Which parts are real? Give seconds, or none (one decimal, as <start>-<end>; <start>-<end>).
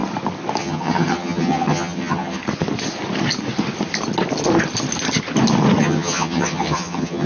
0.0-0.6; 2.4-5.8